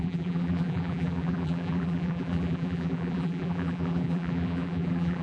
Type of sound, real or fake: fake